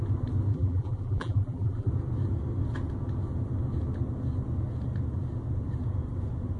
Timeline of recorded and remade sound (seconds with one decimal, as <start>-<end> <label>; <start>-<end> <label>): 0.0-0.5 recorded; 0.5-1.9 remade; 1.9-6.6 recorded